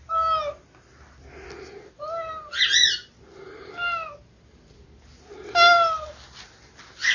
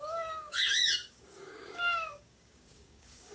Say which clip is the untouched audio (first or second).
first